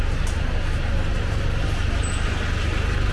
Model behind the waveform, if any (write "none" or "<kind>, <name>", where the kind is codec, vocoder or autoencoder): none